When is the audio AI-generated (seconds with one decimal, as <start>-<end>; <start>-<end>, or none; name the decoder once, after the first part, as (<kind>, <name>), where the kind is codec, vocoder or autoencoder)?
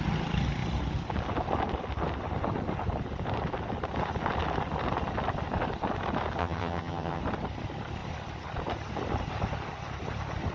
6.4-7.2 (vocoder, HiFi-GAN)